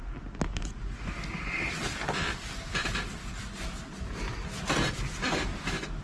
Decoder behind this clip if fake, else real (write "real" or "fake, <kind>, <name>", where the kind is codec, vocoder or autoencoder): real